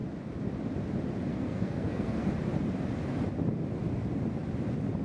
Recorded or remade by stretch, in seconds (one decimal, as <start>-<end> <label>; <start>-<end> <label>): 0.0-1.3 recorded; 1.3-2.3 remade; 2.3-5.0 recorded